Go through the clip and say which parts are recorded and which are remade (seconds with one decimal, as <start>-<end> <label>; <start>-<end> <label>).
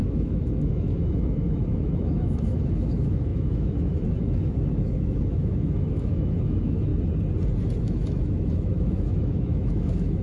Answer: 0.0-6.9 remade; 6.9-7.8 recorded; 7.8-10.2 remade